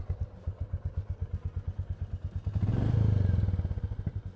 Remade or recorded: recorded